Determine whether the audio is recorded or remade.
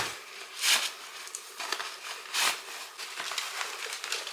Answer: recorded